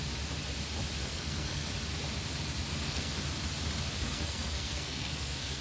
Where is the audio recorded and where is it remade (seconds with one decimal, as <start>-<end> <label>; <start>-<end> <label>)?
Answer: 0.0-1.0 recorded; 1.0-1.7 remade; 1.7-2.7 recorded; 2.7-3.2 remade; 3.2-3.9 recorded; 3.9-5.6 remade